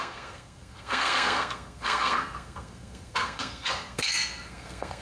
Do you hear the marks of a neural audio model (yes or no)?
yes